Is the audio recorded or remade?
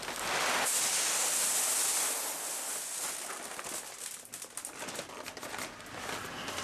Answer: recorded